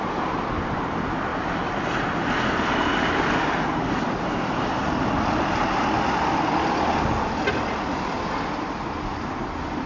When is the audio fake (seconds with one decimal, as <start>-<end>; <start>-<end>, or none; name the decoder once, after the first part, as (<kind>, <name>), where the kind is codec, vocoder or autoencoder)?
none